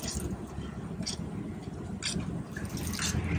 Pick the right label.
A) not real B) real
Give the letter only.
B